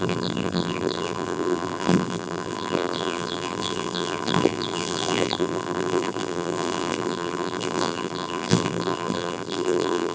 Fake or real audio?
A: fake